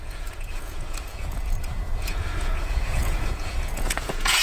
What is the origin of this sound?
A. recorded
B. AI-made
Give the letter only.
B